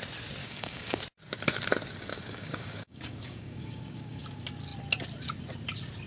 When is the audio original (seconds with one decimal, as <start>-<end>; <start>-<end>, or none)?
0.0-0.4; 1.0-2.1; 4.2-6.1